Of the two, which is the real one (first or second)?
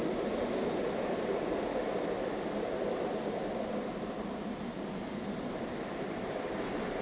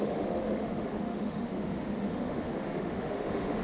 first